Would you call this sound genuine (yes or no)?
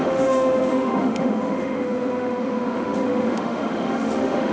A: no